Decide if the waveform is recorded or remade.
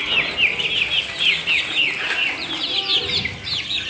recorded